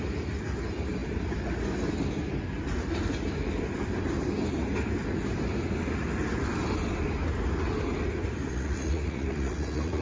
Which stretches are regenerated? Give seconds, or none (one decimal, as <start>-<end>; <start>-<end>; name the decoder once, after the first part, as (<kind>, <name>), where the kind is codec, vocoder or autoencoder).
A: 8.5-10.0 (vocoder, Vocos)